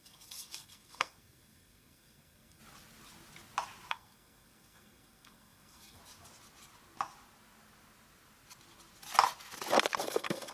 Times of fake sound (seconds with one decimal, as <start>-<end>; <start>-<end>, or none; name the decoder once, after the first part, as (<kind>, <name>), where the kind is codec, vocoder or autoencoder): 0.0-2.6 (codec, SNAC); 3.9-6.0; 10.0-10.5